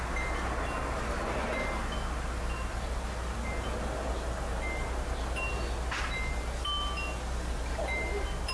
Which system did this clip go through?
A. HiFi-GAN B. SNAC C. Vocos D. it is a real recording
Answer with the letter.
D